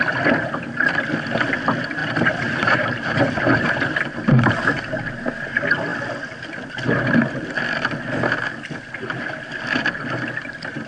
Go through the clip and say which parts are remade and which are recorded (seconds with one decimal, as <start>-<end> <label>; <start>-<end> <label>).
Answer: 0.0-2.0 recorded; 2.0-4.5 remade; 4.5-10.9 recorded